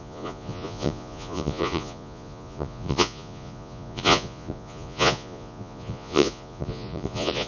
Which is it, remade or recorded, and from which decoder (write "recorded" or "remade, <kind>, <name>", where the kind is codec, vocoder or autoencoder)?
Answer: remade, vocoder, Vocos